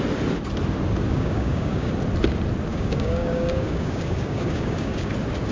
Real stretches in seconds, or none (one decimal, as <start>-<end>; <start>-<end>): 0.0-1.1; 1.9-2.7; 5.1-5.5